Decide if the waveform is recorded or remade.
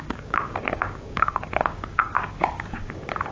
remade